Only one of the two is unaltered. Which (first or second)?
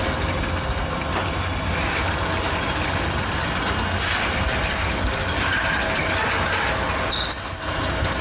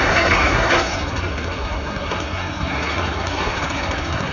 first